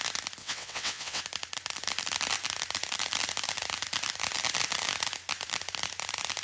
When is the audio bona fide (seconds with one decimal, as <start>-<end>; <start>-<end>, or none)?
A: 0.0-0.4; 1.2-6.4